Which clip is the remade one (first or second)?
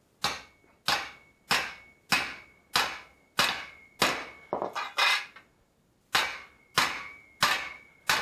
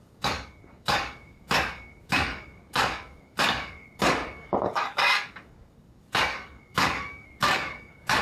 second